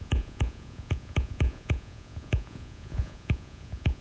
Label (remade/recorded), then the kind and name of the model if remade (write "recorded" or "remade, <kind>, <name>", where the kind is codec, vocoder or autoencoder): remade, vocoder, Vocos